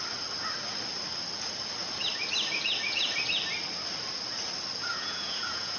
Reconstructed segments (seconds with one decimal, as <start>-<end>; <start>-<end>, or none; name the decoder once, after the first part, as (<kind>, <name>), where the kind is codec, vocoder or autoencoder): 4.8-5.8 (vocoder, Vocos)